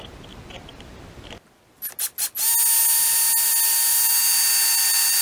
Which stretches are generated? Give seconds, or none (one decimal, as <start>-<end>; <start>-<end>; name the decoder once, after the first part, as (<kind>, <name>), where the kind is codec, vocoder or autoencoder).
none